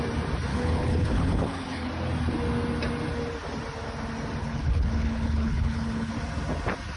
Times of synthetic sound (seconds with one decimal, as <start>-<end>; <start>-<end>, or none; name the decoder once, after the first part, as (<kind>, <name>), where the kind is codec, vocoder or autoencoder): 0.5-1.9 (codec, HILCodec); 4.4-6.1